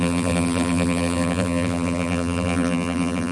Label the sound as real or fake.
fake